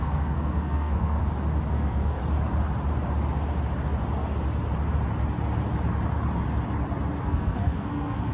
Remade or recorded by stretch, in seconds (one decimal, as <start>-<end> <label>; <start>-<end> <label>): 0.0-1.2 remade; 1.2-1.7 recorded; 1.7-2.2 remade; 2.2-7.2 recorded; 7.2-8.3 remade